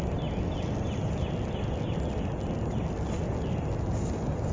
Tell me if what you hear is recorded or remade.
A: recorded